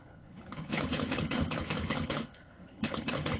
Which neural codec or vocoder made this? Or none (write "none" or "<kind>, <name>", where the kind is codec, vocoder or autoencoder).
codec, HILCodec